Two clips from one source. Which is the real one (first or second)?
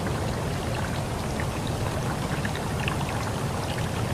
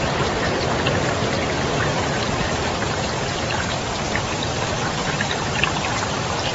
first